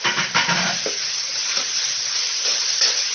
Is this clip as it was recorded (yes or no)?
no